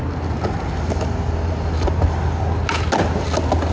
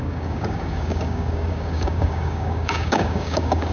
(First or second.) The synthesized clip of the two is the second